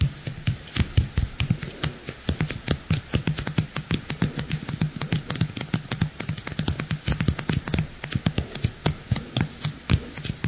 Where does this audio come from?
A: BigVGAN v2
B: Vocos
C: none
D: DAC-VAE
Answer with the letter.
C